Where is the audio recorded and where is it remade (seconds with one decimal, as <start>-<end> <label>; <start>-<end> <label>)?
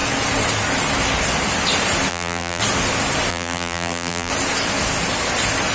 0.0-2.1 recorded; 2.1-2.6 remade; 2.6-3.3 recorded; 3.3-4.3 remade; 4.3-5.7 recorded